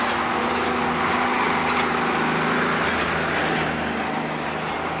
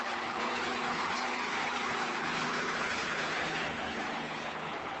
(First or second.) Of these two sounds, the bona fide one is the first